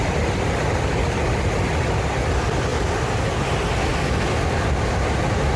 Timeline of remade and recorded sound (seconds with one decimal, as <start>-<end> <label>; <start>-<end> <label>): 0.0-5.6 recorded